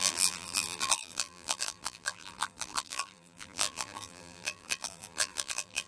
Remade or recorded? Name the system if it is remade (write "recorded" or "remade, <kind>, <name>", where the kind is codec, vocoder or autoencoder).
remade, vocoder, BigVGAN v2